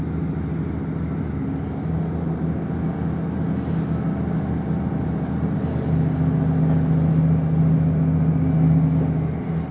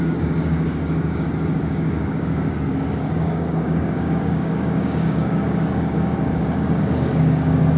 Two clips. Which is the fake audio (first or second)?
second